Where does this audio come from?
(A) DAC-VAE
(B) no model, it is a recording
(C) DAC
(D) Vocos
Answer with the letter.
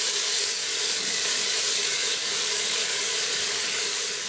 C